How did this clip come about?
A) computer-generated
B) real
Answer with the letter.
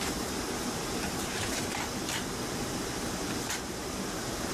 A